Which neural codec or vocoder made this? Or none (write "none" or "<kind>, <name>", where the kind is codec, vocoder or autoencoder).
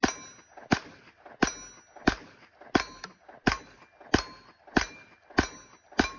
none